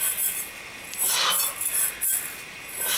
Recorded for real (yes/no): yes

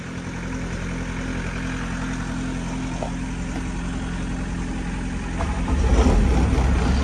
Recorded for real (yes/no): yes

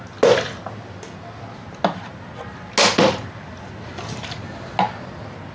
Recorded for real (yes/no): yes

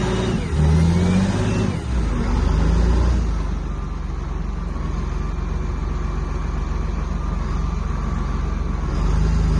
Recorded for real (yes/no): yes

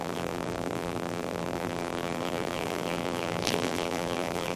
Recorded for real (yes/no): no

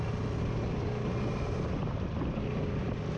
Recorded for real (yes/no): yes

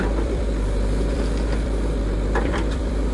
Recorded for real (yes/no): no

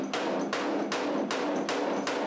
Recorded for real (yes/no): yes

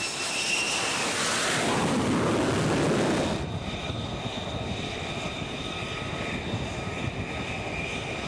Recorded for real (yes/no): yes